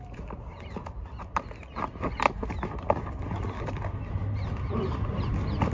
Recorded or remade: recorded